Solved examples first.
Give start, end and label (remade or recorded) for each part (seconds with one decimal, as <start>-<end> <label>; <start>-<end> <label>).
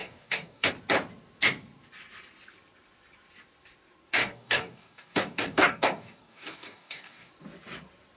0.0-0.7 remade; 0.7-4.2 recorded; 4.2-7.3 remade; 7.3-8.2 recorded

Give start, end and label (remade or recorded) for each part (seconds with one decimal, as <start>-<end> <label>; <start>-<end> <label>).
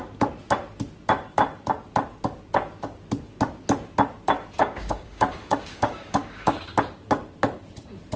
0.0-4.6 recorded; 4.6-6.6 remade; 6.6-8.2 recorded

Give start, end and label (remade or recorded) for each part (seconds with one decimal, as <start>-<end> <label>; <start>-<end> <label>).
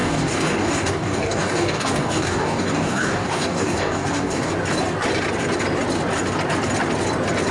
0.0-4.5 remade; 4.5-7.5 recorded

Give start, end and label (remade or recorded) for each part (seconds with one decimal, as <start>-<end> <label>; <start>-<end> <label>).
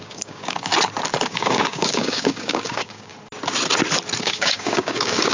0.0-0.7 remade; 0.7-1.3 recorded; 1.3-3.1 remade; 3.1-4.2 recorded; 4.2-5.3 remade